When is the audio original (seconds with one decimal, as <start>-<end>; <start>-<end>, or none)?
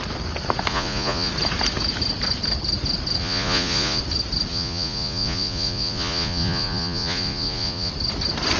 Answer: 0.0-0.7; 1.3-3.2; 4.0-4.5; 7.9-8.6